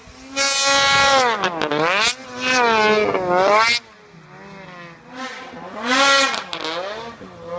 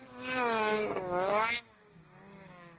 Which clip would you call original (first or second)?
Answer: first